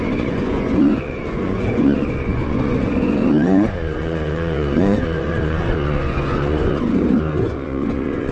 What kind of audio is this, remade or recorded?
remade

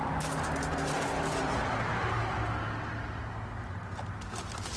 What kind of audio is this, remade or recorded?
recorded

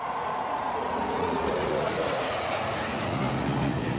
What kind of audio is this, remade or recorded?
remade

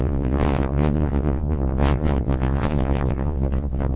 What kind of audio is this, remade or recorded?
remade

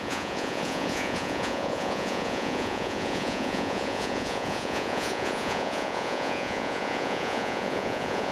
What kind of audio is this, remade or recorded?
remade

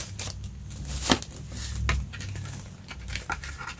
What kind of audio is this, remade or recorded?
recorded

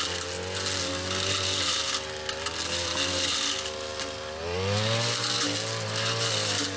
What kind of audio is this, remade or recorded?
recorded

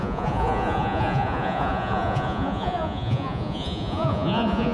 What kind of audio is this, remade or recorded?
remade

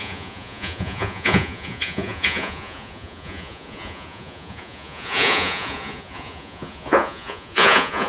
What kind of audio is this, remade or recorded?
remade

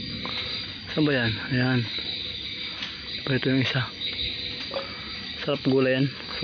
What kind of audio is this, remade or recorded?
recorded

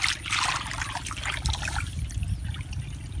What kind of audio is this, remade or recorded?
recorded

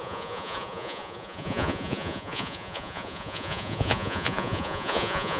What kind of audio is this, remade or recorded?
remade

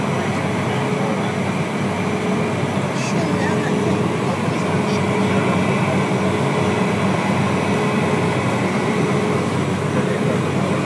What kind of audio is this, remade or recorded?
recorded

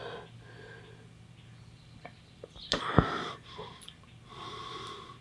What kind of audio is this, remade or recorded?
recorded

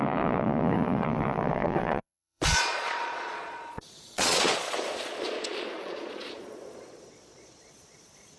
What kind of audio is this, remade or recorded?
remade